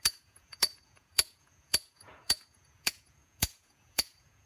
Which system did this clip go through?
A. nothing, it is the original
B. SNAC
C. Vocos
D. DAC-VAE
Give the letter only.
C